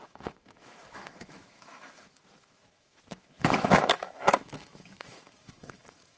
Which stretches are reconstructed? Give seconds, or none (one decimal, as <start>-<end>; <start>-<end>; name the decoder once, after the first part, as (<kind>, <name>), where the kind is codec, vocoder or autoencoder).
0.0-6.2 (autoencoder, DAC-VAE)